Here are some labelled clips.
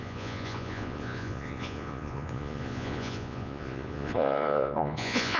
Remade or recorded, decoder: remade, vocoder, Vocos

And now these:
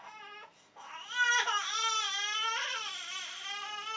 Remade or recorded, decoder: recorded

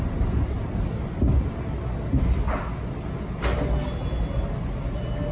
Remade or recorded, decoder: recorded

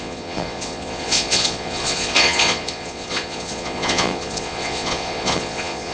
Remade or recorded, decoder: remade, vocoder, Vocos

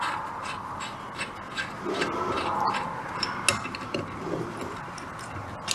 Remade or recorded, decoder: recorded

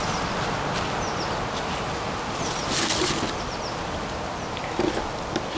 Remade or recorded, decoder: recorded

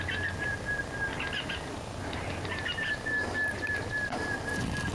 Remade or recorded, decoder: recorded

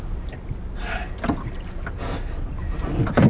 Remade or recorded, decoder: recorded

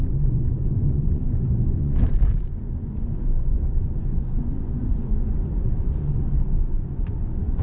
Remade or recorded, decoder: remade, vocoder, Vocos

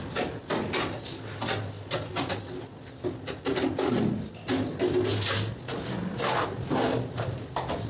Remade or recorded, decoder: recorded